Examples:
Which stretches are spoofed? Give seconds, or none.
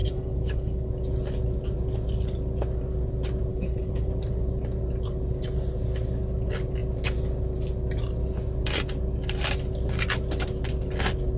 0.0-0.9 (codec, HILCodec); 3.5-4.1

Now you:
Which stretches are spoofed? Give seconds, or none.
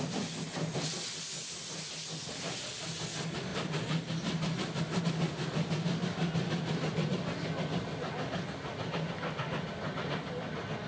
none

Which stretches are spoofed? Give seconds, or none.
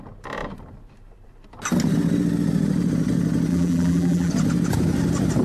3.5-4.3 (vocoder, BigVGAN v2)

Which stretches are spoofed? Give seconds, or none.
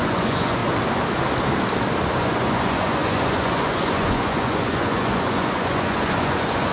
0.0-0.6 (vocoder, Vocos); 2.1-6.7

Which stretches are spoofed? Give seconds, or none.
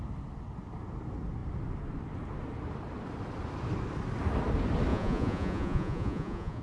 4.9-6.6 (vocoder, Vocos)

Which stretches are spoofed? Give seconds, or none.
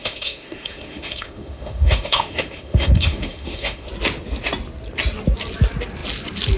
0.0-3.9 (autoencoder, DAC-VAE)